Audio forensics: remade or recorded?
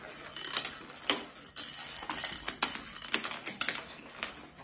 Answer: recorded